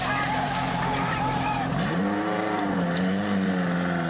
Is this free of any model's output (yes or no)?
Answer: no